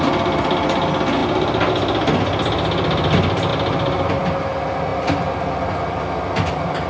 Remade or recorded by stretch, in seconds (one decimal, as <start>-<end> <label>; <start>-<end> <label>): 0.0-6.9 recorded